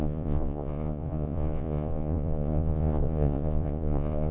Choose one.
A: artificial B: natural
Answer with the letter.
A